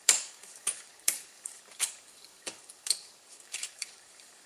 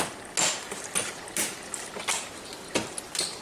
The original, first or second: second